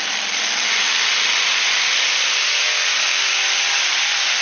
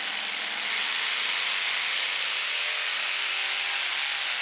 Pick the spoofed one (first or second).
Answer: first